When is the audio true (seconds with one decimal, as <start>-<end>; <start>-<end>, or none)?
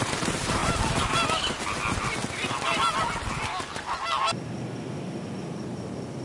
0.6-4.3